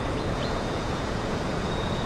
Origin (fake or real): fake